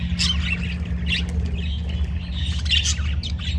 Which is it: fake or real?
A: real